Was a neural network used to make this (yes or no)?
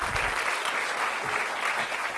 no